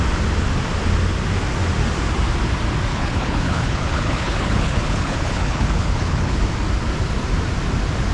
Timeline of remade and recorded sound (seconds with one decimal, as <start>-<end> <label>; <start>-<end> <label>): 0.0-2.9 recorded; 2.9-6.4 remade; 6.4-8.1 recorded